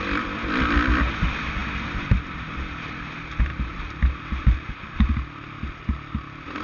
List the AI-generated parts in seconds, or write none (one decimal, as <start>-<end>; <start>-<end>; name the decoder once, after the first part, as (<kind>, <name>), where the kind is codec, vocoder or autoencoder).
3.5-5.1 (vocoder, BigVGAN v2)